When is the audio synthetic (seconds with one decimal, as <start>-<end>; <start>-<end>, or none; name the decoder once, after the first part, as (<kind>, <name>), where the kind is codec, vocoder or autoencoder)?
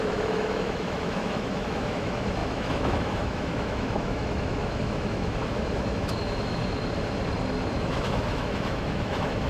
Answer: 0.0-6.6 (autoencoder, DAC-VAE); 7.7-9.5